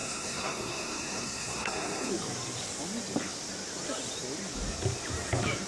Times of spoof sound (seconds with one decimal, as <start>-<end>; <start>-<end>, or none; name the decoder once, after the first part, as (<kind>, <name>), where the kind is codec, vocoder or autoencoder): 0.0-2.1 (codec, SNAC)